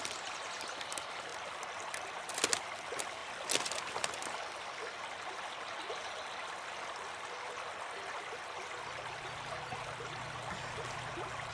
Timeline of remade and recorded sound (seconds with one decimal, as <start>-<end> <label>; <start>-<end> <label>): 0.0-11.5 recorded